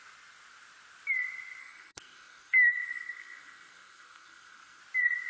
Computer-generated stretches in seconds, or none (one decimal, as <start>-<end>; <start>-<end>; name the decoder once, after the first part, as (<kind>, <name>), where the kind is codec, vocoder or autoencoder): 1.6-4.8 (codec, SNAC)